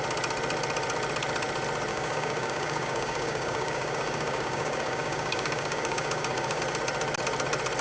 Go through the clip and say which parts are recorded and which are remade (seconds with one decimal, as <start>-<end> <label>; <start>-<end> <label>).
0.0-1.9 recorded; 1.9-6.6 remade; 6.6-7.8 recorded

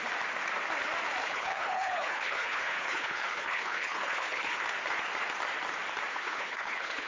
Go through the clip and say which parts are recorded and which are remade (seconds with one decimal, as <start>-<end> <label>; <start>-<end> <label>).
0.0-1.2 recorded; 1.2-4.6 remade; 4.6-6.1 recorded; 6.1-7.1 remade

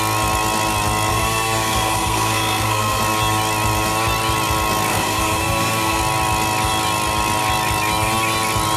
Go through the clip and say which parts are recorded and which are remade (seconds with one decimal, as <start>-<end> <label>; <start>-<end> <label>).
0.0-1.1 recorded; 1.1-3.0 remade; 3.0-4.9 recorded; 4.9-6.0 remade; 6.0-8.8 recorded

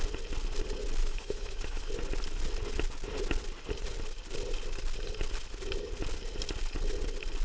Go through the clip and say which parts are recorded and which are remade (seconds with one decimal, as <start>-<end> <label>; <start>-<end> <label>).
0.0-1.0 recorded; 1.0-1.9 remade; 1.9-7.4 recorded

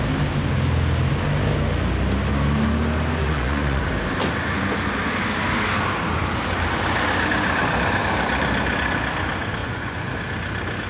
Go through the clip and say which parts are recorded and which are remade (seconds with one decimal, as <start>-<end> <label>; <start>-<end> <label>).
0.0-3.2 recorded; 3.2-3.8 remade; 3.8-9.6 recorded; 9.6-10.1 remade; 10.1-10.9 recorded

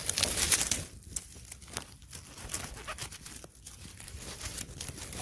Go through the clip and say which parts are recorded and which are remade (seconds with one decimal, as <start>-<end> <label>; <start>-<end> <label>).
0.0-3.0 remade; 3.0-3.7 recorded; 3.7-5.2 remade